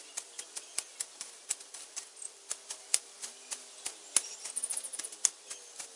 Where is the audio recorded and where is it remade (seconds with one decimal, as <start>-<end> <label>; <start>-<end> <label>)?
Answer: 0.0-6.0 recorded